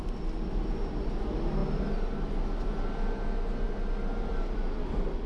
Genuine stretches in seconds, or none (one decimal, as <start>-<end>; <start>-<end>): 0.0-5.3